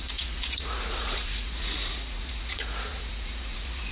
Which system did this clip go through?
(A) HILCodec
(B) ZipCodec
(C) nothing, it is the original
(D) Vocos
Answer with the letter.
D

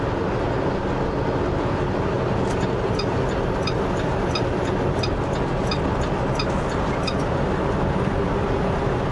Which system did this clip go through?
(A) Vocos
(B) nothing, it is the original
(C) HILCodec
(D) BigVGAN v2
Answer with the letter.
B